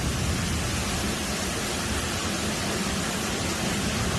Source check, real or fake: real